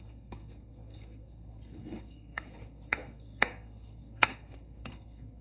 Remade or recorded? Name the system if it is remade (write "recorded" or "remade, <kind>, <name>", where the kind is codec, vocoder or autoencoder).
remade, codec, SNAC